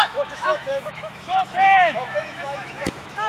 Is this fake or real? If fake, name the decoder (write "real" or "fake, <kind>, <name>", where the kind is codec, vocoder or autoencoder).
fake, autoencoder, DAC-VAE